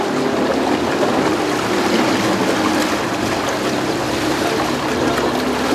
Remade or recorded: recorded